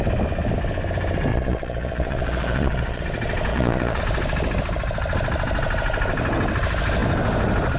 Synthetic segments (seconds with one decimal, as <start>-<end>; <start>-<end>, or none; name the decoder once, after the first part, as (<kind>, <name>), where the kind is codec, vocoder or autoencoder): 1.3-3.0 (vocoder, Vocos); 3.5-4.0